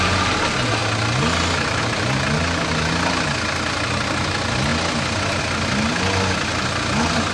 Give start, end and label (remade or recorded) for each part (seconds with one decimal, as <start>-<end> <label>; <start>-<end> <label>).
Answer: 0.0-7.3 recorded